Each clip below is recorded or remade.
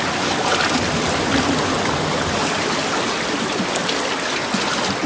recorded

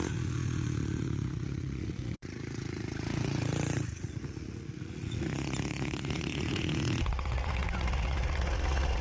remade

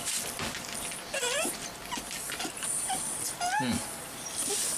recorded